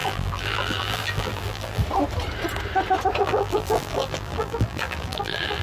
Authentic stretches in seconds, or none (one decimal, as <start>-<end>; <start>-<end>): 1.8-3.2